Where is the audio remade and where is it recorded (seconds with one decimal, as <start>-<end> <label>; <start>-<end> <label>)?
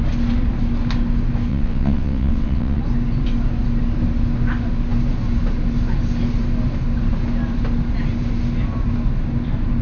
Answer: 0.0-1.5 recorded; 1.5-2.8 remade; 2.8-9.8 recorded